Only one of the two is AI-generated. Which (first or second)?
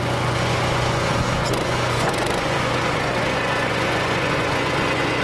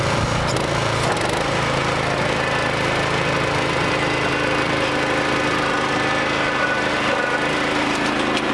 first